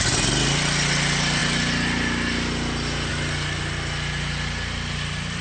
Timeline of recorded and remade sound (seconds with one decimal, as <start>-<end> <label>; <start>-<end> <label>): 0.0-5.4 recorded